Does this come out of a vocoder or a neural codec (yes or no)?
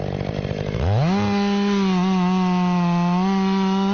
no